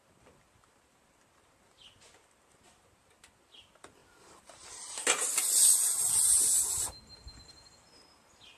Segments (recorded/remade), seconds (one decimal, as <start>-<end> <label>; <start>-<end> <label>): 0.0-8.6 recorded